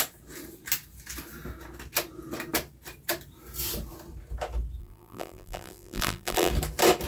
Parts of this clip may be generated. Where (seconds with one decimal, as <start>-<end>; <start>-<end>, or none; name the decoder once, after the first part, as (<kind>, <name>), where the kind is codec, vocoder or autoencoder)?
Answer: 4.8-6.5 (vocoder, BigVGAN v2)

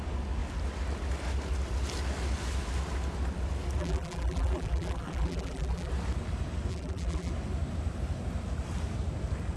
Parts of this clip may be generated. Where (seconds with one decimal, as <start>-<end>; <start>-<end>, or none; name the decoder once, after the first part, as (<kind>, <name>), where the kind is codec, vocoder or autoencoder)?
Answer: 3.8-5.9 (vocoder, BigVGAN v2); 6.7-7.3

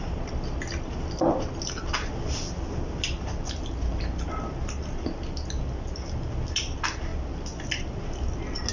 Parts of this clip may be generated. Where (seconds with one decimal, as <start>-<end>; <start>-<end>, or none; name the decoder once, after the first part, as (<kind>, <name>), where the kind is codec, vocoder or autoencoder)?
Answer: none

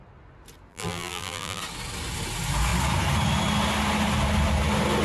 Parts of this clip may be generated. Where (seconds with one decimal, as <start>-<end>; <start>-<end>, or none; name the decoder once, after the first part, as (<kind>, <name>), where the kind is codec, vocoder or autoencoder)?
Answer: 0.7-1.6 (vocoder, BigVGAN v2)

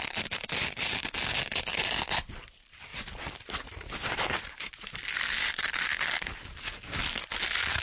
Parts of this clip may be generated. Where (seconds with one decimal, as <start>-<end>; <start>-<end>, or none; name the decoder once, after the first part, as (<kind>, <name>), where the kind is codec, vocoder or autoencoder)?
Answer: 2.9-4.4 (vocoder, BigVGAN v2)

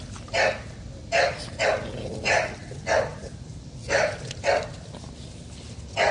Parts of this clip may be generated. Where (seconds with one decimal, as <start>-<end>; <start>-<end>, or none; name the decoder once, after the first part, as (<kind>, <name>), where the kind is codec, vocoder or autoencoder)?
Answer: 3.8-4.6 (vocoder, BigVGAN v2)